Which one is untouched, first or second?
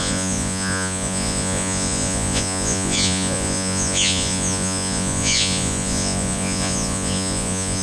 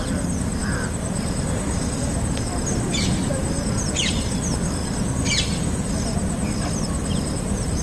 second